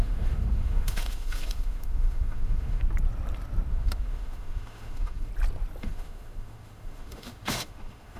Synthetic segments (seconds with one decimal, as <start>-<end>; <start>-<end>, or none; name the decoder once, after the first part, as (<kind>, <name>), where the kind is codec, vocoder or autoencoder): 0.0-2.8 (autoencoder, DAC-VAE); 3.7-5.3; 5.8-8.2